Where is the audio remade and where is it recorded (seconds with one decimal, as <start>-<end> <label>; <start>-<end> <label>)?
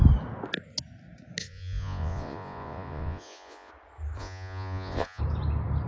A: 0.0-1.4 recorded; 1.4-3.7 remade; 3.7-4.2 recorded; 4.2-5.2 remade; 5.2-5.9 recorded